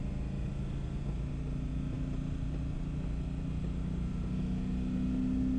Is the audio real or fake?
real